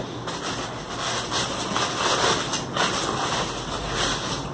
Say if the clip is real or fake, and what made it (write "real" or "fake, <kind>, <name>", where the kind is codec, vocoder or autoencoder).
real